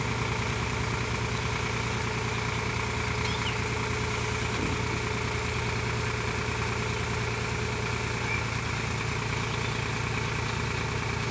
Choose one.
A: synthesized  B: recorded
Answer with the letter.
B